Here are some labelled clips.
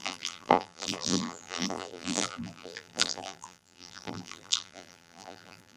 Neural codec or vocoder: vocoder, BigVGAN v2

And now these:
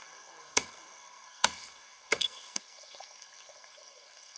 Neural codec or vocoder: codec, SNAC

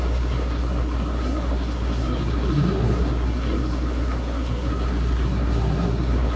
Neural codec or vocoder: codec, SNAC